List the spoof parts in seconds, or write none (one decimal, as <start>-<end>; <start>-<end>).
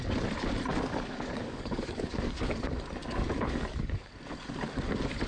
0.7-2.5; 3.0-4.1